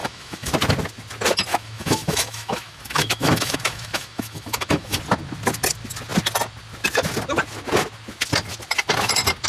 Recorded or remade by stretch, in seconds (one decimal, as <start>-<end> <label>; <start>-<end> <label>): 0.0-0.5 remade; 0.5-1.5 recorded; 1.5-5.0 remade; 5.0-9.5 recorded